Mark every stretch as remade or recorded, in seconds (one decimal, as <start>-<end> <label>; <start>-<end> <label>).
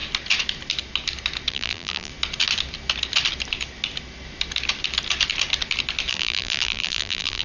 0.0-1.5 recorded; 1.5-2.1 remade; 2.1-6.1 recorded; 6.1-7.4 remade